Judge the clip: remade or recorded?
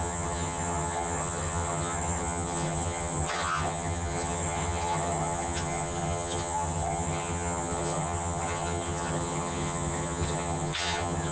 remade